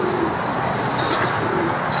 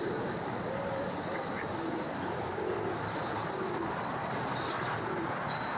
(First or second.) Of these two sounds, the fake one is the second